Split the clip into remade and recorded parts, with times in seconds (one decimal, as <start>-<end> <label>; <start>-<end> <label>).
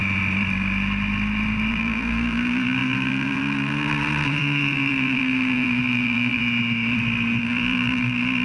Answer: 0.0-1.7 recorded; 1.7-6.4 remade; 6.4-7.4 recorded; 7.4-8.4 remade